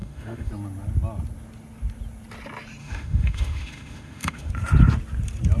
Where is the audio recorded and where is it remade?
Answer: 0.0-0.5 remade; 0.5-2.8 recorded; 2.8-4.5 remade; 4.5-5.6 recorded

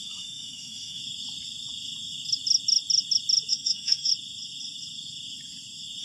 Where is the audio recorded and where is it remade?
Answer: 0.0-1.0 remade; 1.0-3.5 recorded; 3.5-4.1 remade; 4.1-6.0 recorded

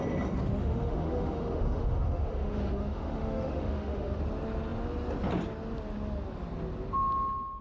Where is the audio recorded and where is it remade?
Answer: 0.0-0.6 recorded; 0.6-4.2 remade; 4.2-7.6 recorded

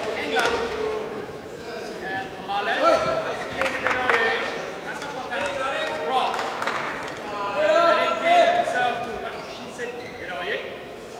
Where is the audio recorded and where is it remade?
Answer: 0.0-7.0 remade; 7.0-8.6 recorded; 8.6-11.2 remade